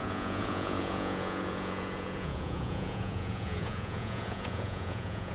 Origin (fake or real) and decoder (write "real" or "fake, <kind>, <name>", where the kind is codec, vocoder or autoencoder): fake, vocoder, Vocos